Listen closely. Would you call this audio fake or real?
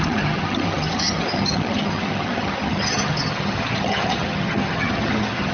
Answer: fake